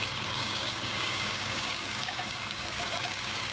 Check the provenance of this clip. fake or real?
fake